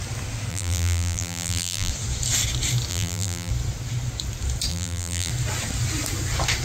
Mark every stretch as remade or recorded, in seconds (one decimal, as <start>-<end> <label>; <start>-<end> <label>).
0.0-0.5 recorded; 0.5-1.9 remade; 1.9-2.9 recorded; 2.9-3.5 remade; 3.5-4.7 recorded; 4.7-5.3 remade; 5.3-6.6 recorded